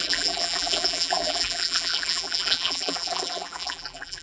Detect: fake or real fake